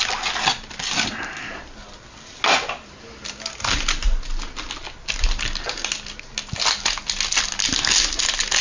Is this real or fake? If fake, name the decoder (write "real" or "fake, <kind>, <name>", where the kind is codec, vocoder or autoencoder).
real